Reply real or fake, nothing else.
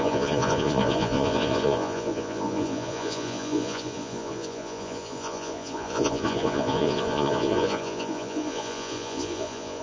fake